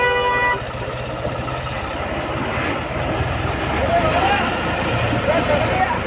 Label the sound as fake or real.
real